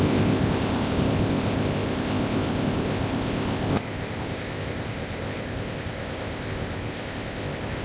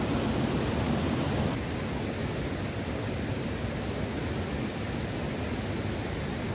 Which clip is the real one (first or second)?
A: second